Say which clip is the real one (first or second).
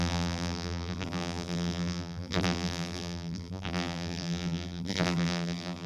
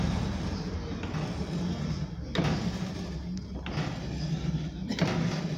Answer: second